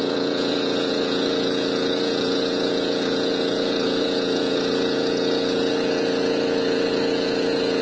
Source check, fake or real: fake